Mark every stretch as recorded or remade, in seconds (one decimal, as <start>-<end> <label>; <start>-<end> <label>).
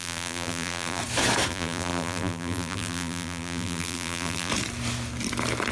0.0-1.0 remade; 1.0-1.5 recorded; 1.5-4.5 remade; 4.5-5.7 recorded